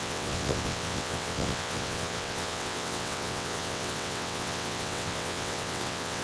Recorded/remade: remade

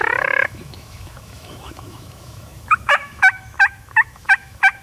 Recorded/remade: remade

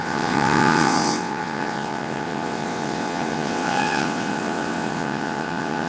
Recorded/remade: remade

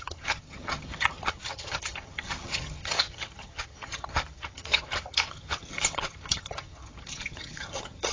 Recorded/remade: remade